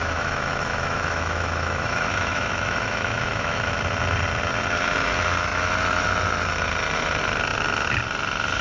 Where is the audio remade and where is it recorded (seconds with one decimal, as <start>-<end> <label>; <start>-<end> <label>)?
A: 0.0-3.8 remade; 3.8-8.6 recorded